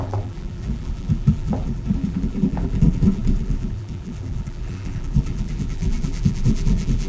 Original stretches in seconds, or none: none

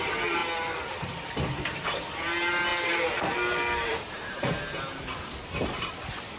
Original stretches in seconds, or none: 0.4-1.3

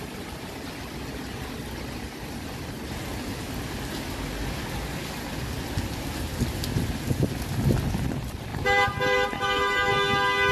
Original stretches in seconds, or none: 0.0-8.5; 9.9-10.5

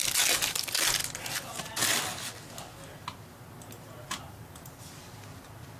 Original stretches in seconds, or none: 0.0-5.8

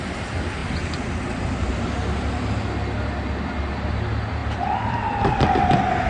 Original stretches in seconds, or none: 0.0-4.4